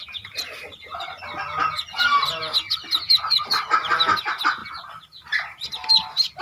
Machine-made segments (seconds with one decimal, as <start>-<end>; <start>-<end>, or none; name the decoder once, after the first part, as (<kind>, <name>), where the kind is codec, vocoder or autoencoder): none